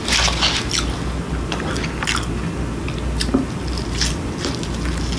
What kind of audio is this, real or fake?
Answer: real